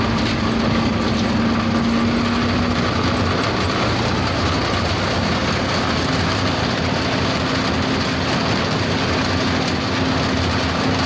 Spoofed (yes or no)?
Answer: no